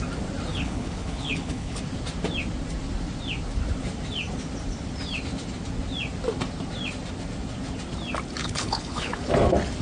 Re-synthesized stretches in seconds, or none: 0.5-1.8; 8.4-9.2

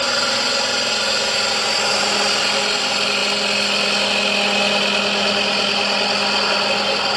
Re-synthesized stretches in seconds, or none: none